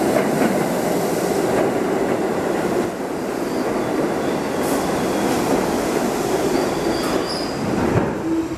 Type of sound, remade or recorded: recorded